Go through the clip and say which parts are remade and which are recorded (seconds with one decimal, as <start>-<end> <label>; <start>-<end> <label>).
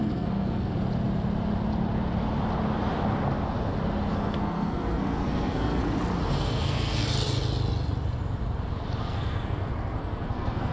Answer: 0.0-0.7 remade; 0.7-4.1 recorded; 4.1-5.8 remade; 5.8-6.3 recorded; 6.3-7.0 remade; 7.0-9.0 recorded; 9.0-10.7 remade